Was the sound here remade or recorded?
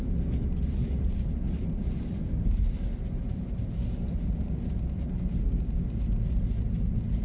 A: recorded